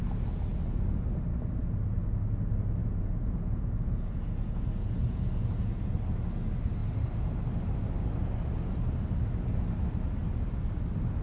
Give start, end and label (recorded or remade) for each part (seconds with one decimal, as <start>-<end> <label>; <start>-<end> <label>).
0.0-2.8 recorded; 2.8-5.9 remade; 5.9-11.2 recorded